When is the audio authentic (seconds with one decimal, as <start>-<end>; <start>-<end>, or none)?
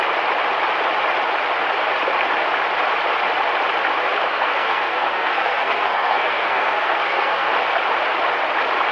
0.0-4.3; 7.5-8.9